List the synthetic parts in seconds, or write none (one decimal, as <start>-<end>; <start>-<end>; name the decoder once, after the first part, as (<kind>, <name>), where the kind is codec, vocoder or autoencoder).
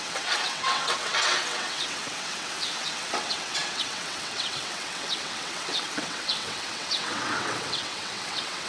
0.0-8.7 (vocoder, WaveNeXt)